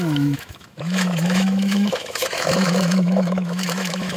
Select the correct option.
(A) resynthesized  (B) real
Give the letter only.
A